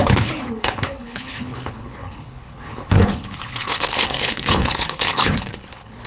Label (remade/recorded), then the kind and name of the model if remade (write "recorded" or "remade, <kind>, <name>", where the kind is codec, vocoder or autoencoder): remade, codec, HILCodec